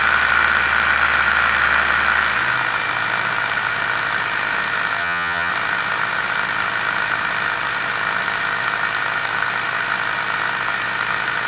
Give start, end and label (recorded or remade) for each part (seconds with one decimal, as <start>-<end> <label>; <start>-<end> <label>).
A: 0.0-5.0 recorded; 5.0-5.5 remade; 5.5-11.5 recorded